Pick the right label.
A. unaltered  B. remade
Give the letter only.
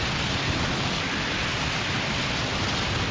A